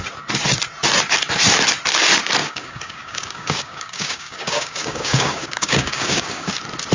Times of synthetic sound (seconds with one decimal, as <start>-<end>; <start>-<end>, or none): 2.4-6.5